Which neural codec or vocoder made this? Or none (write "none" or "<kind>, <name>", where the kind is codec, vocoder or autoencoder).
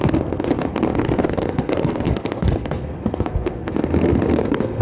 codec, SNAC